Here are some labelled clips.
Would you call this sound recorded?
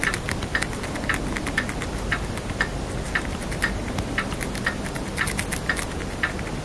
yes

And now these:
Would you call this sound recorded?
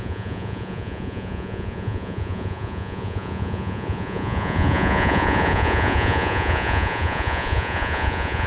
no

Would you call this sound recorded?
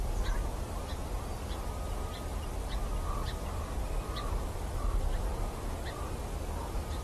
yes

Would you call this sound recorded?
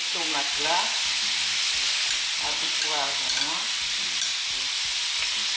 yes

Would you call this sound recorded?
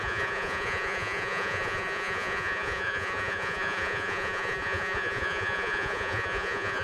no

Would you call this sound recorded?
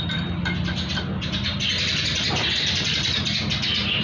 yes